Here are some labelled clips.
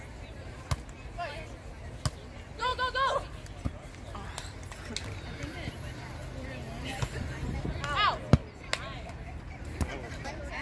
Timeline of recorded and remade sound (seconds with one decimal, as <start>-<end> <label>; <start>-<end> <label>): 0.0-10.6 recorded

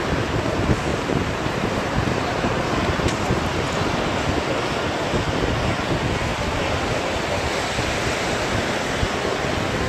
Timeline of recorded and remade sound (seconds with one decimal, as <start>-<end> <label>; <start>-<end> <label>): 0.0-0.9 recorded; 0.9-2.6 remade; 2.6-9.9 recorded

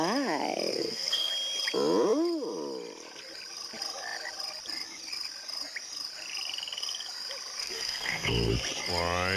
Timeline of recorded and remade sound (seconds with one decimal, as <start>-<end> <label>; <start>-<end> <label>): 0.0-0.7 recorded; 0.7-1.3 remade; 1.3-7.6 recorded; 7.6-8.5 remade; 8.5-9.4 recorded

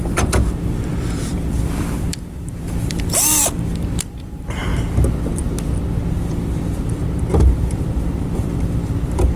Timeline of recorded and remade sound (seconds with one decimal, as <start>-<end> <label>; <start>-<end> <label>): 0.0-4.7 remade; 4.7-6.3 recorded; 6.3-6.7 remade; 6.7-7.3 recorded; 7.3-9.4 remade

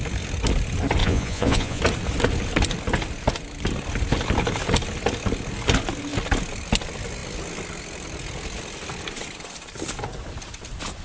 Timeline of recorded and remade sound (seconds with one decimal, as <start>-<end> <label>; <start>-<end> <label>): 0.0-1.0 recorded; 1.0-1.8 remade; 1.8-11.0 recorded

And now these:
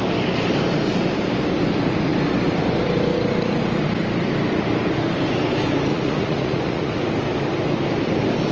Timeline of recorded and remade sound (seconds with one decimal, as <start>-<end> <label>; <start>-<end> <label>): 0.0-5.9 recorded; 5.9-6.9 remade; 6.9-8.5 recorded

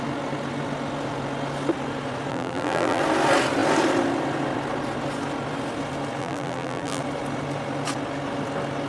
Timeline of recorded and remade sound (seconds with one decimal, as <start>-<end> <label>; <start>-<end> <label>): 0.0-2.3 recorded; 2.3-3.0 remade; 3.0-6.2 recorded; 6.2-7.0 remade; 7.0-8.9 recorded

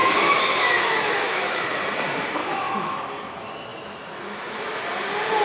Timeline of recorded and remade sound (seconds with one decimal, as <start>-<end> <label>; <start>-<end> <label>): 0.0-1.6 remade; 1.6-2.4 recorded; 2.4-3.0 remade; 3.0-3.7 recorded; 3.7-4.8 remade; 4.8-5.4 recorded